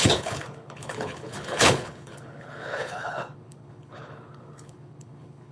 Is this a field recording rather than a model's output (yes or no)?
no